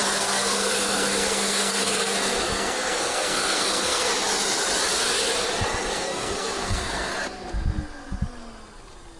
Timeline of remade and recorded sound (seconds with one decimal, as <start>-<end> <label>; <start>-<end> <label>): 0.0-4.1 remade; 4.1-5.9 recorded; 5.9-7.1 remade; 7.1-9.2 recorded